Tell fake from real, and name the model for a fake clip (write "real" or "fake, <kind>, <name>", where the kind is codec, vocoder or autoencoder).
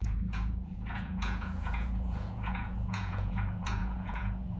fake, vocoder, Vocos